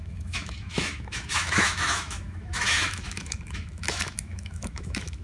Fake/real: fake